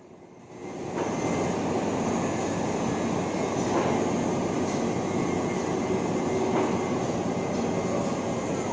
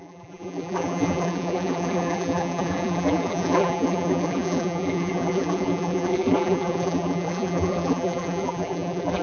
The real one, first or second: first